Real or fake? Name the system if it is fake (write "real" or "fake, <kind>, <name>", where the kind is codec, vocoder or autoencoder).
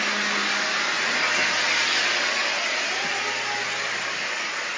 real